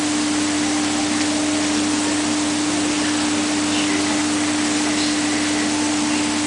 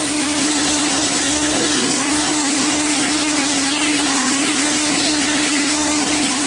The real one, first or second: first